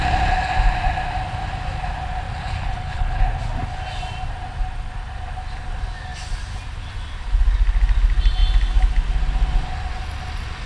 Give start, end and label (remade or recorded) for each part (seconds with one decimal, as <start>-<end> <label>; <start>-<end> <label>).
0.0-2.4 recorded; 2.4-3.2 remade; 3.2-10.7 recorded